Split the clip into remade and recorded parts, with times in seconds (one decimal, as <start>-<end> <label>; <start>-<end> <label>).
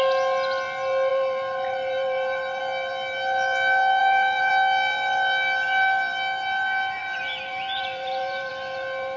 0.0-1.1 recorded; 1.1-2.6 remade; 2.6-4.0 recorded; 4.0-4.5 remade; 4.5-7.0 recorded; 7.0-8.5 remade; 8.5-9.2 recorded